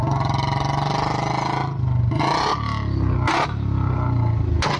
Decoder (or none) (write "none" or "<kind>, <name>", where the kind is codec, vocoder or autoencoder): none